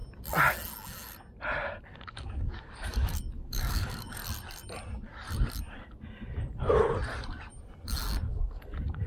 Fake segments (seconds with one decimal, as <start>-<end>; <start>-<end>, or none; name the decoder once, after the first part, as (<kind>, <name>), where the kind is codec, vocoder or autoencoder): 1.8-4.2 (codec, DAC); 8.2-9.1